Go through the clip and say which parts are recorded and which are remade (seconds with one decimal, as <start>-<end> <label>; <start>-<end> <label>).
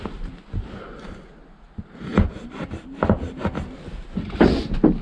0.0-5.0 recorded